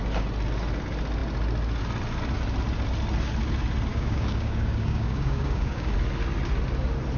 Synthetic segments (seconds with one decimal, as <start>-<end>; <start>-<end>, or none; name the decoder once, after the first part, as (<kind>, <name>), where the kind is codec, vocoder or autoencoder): 3.9-5.9 (codec, DAC)